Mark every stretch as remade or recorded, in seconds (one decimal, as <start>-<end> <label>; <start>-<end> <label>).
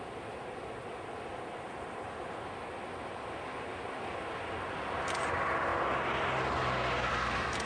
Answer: 0.0-7.7 recorded